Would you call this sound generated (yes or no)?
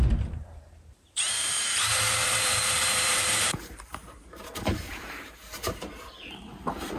yes